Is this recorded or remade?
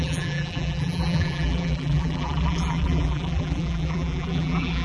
remade